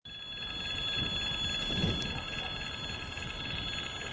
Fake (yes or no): no